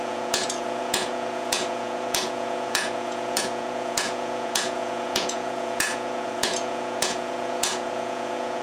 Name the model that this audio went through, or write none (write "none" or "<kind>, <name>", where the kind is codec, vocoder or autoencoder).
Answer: vocoder, Vocos